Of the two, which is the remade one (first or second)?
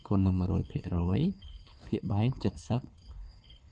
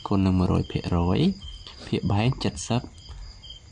first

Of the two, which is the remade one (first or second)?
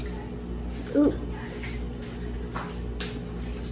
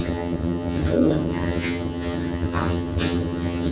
second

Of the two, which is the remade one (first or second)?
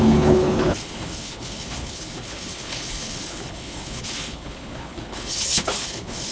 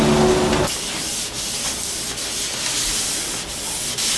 first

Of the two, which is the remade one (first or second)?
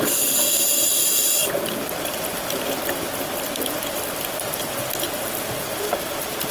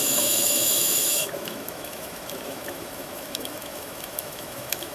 second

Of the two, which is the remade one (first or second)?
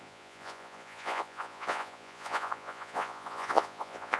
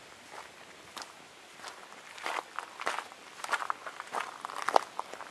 first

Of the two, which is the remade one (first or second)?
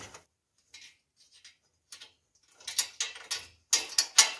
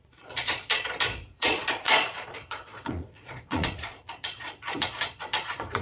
second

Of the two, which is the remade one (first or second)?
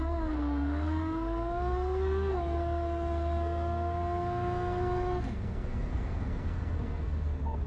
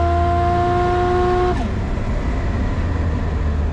first